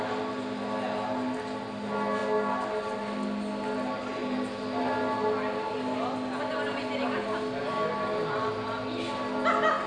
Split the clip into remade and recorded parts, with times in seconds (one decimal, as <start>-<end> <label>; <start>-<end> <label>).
0.0-9.9 recorded